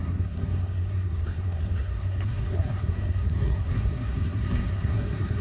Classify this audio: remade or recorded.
remade